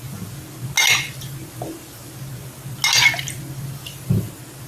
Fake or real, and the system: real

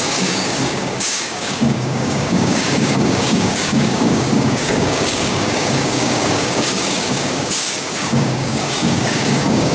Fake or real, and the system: fake, codec, DAC